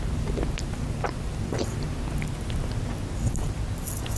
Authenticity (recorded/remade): recorded